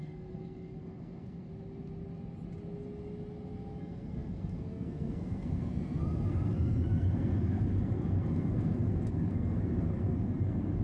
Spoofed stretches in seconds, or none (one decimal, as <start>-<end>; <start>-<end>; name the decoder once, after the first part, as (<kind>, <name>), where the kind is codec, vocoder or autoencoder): 0.0-1.5 (codec, SNAC); 3.8-10.8